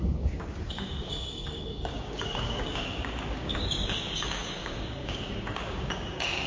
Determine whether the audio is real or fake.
fake